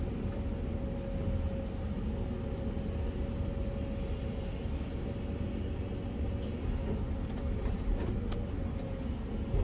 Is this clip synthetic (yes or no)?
no